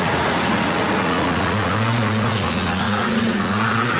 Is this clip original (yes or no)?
no